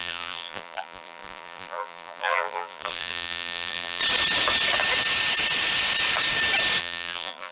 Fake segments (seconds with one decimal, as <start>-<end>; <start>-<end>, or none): 0.0-4.0; 6.8-7.5